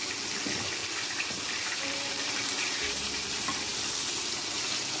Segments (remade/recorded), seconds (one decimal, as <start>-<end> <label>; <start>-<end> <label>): 0.0-0.8 recorded; 0.8-3.8 remade; 3.8-5.0 recorded

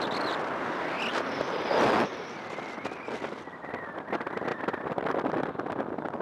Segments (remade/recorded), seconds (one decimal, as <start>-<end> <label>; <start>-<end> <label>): 0.0-1.1 recorded; 1.1-3.1 remade; 3.1-4.5 recorded; 4.5-5.5 remade; 5.5-6.2 recorded

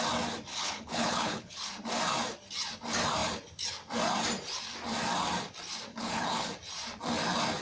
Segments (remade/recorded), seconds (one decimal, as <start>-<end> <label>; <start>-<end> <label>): 0.0-0.5 recorded; 0.5-1.7 remade; 1.7-5.9 recorded; 5.9-6.5 remade; 6.5-7.6 recorded

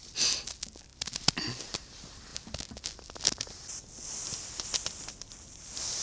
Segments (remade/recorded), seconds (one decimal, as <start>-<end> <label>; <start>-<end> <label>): 0.0-6.0 recorded